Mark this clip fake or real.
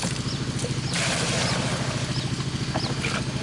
real